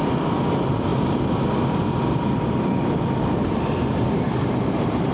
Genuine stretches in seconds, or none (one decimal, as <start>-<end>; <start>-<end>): 0.0-5.1